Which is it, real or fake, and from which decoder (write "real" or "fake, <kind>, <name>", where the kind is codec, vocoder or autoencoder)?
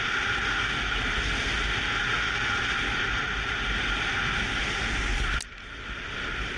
real